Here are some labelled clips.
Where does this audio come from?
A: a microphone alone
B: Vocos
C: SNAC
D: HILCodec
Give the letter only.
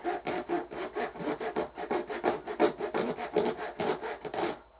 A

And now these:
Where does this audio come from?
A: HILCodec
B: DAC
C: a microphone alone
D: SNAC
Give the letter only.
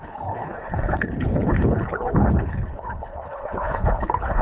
A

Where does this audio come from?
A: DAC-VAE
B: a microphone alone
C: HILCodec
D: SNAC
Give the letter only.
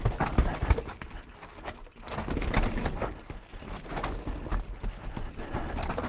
B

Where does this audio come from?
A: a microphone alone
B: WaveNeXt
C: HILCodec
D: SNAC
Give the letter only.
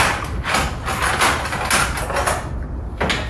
A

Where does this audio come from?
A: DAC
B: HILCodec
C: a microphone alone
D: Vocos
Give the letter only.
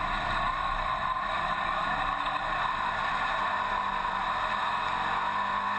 C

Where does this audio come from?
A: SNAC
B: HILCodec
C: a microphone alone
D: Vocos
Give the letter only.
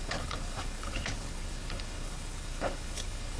B